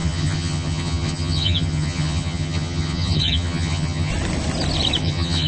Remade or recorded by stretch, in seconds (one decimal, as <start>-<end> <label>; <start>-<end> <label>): 0.0-4.1 remade; 4.1-5.0 recorded; 5.0-5.5 remade